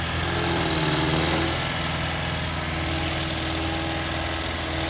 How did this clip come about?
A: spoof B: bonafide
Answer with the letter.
B